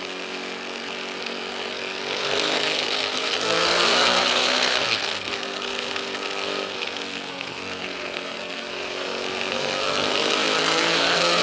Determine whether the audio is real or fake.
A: fake